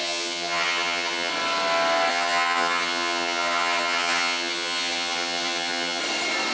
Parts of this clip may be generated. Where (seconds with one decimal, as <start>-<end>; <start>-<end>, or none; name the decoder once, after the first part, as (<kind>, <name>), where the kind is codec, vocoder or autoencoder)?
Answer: 0.0-1.3 (vocoder, HiFi-GAN); 2.1-6.0